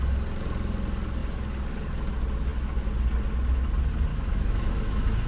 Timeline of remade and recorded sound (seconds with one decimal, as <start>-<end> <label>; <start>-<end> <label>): 0.0-4.1 recorded; 4.1-5.3 remade